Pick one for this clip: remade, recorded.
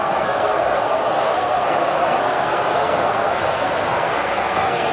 remade